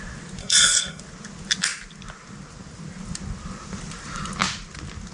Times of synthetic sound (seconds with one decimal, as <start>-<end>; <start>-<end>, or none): 0.4-1.0